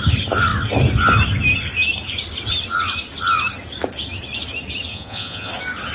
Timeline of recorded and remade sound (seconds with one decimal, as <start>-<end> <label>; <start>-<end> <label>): 0.0-4.9 recorded; 4.9-5.5 remade; 5.5-5.9 recorded

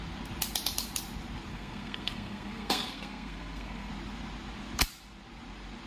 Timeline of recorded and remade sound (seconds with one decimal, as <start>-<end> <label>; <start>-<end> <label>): 0.0-1.5 recorded; 1.5-3.9 remade; 3.9-5.9 recorded

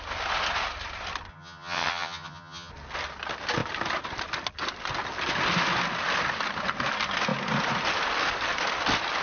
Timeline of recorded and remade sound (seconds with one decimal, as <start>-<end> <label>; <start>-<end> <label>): 0.0-1.3 recorded; 1.3-2.7 remade; 2.7-9.2 recorded

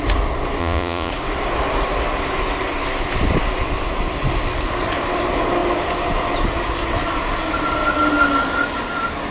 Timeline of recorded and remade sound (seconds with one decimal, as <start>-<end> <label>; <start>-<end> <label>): 0.0-0.6 recorded; 0.6-1.1 remade; 1.1-9.3 recorded

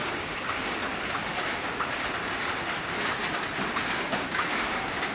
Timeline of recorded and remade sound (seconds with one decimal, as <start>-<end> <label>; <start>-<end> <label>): 0.0-0.8 remade; 0.8-3.9 recorded; 3.9-5.1 remade

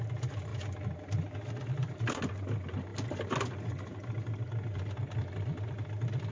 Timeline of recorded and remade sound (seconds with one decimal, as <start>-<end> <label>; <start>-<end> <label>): 0.0-6.3 recorded

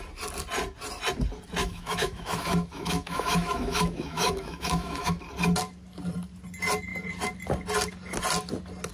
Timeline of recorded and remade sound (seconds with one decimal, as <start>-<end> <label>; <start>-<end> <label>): 0.0-1.6 recorded; 1.6-5.2 remade; 5.2-8.9 recorded